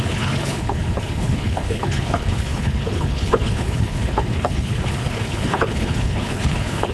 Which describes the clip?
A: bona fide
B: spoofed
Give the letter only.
B